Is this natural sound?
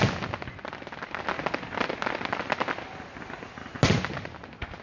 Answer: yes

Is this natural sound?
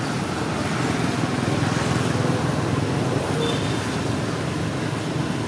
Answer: yes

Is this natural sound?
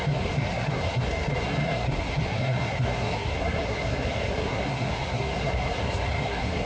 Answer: no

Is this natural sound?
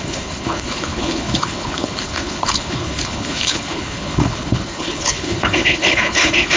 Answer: no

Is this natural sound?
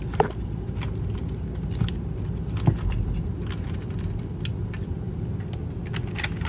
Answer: yes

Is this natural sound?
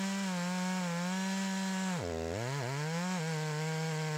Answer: yes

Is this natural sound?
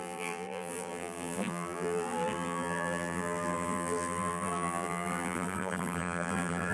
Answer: no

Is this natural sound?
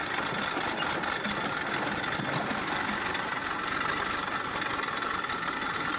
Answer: yes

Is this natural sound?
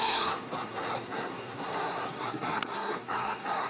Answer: no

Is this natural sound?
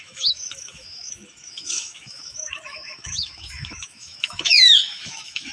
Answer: no